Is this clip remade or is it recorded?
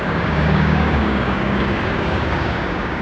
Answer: remade